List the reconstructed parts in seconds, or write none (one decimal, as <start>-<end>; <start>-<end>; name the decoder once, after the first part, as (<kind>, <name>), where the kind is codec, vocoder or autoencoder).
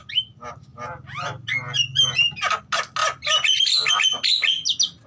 3.0-3.9 (vocoder, BigVGAN v2)